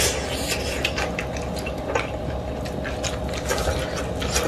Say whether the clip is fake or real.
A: real